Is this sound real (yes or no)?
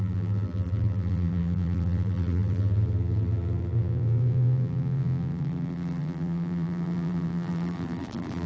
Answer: no